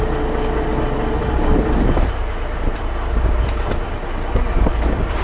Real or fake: real